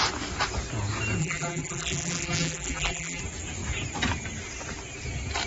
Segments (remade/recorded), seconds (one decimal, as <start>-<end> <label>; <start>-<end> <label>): 0.0-1.2 recorded; 1.2-3.2 remade; 3.2-5.5 recorded

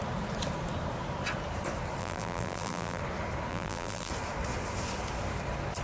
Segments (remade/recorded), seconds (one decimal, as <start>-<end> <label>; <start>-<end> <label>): 0.0-2.0 recorded; 2.0-3.0 remade; 3.0-3.5 recorded; 3.5-4.1 remade; 4.1-5.8 recorded

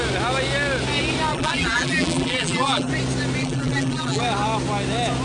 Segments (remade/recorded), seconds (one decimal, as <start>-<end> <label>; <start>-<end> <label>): 0.0-1.3 recorded; 1.3-2.9 remade; 2.9-3.4 recorded; 3.4-4.2 remade; 4.2-5.2 recorded

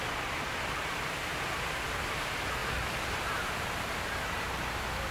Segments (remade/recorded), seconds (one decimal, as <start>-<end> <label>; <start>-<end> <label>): 0.0-2.6 recorded; 2.6-5.1 remade

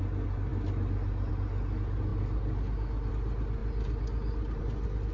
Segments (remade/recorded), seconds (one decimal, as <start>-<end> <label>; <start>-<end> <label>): 0.0-5.1 recorded

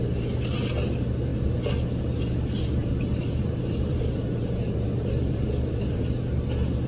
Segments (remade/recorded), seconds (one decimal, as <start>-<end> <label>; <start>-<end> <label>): 0.0-2.8 recorded; 2.8-6.0 remade; 6.0-6.9 recorded

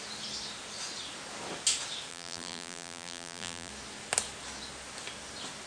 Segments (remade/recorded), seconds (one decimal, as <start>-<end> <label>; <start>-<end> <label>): 0.0-2.1 recorded; 2.1-3.7 remade; 3.7-5.7 recorded

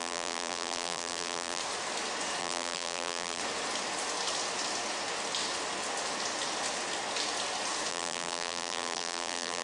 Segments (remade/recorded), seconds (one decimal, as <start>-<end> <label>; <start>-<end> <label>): 0.0-1.6 remade; 1.6-2.4 recorded; 2.4-3.4 remade; 3.4-7.9 recorded; 7.9-9.6 remade